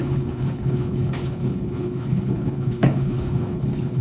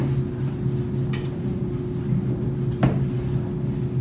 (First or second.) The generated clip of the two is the first